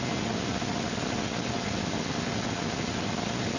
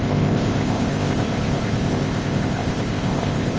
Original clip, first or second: first